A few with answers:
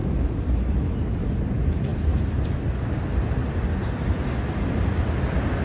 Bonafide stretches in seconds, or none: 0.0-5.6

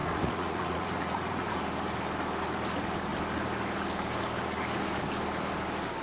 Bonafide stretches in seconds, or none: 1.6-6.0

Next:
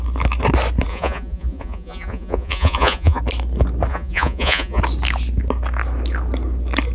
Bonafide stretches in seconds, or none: 0.0-0.9; 3.2-3.9; 4.8-6.9

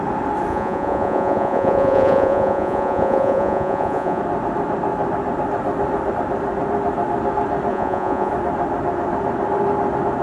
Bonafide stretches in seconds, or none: 0.0-0.5; 4.2-7.7; 8.3-10.2

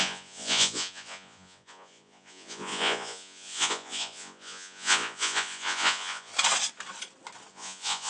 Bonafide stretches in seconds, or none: 6.3-7.5

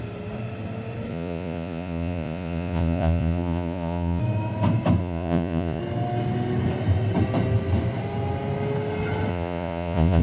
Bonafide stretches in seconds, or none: 0.0-1.1; 4.2-5.0; 5.8-9.3

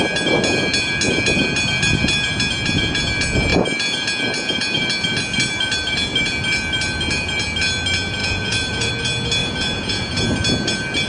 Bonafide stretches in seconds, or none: 0.0-8.2; 8.9-9.4; 10.2-11.1